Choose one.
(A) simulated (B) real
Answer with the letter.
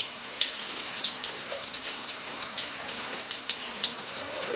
A